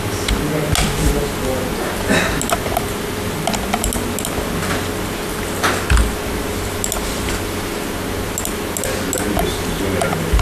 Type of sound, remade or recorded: recorded